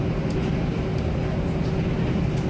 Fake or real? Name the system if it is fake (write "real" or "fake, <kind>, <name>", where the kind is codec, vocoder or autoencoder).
real